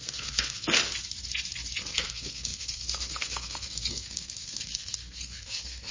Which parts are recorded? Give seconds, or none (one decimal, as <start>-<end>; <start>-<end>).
0.8-1.9